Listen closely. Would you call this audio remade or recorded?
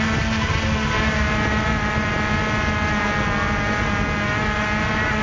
recorded